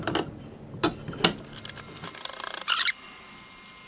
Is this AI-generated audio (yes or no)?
no